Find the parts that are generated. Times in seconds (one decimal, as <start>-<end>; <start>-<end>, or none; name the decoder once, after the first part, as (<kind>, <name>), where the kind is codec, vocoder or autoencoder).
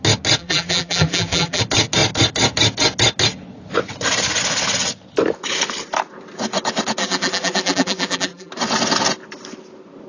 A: 0.4-1.6 (vocoder, BigVGAN v2); 7.0-8.5